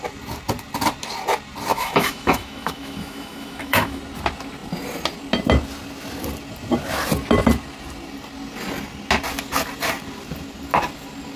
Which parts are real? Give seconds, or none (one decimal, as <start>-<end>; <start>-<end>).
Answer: 0.0-1.7; 4.0-11.4